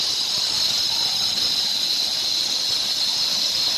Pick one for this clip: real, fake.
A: real